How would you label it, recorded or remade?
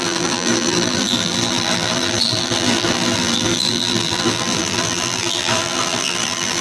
remade